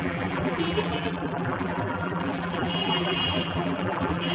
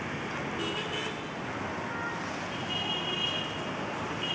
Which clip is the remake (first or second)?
first